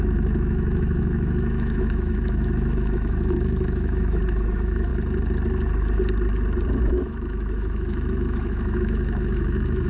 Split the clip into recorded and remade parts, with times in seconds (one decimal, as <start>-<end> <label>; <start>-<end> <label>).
0.0-4.9 remade; 4.9-6.7 recorded; 6.7-9.9 remade